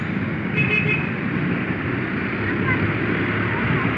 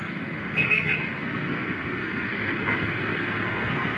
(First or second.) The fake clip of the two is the second